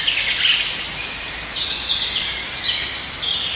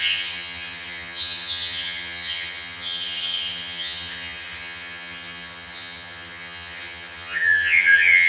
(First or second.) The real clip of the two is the first